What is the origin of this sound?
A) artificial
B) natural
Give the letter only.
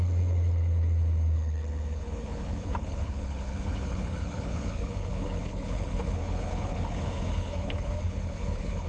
A